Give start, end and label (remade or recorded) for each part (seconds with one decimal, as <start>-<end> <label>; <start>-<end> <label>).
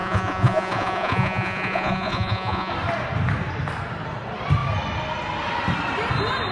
0.0-2.7 remade; 2.7-6.5 recorded